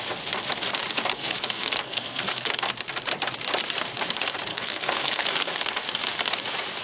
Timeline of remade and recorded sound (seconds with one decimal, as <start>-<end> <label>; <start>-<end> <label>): 0.0-1.1 recorded; 1.1-2.7 remade; 2.7-4.5 recorded; 4.5-5.6 remade; 5.6-6.8 recorded